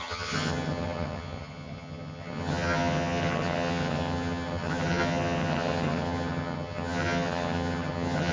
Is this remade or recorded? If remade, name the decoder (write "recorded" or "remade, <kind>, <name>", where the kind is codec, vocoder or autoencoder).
remade, vocoder, HiFi-GAN